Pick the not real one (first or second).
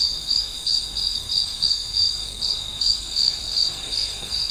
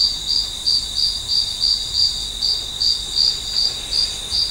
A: first